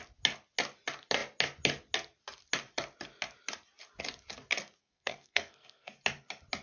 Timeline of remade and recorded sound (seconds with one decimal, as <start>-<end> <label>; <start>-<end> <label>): 0.0-4.8 recorded; 4.8-5.9 remade; 5.9-6.6 recorded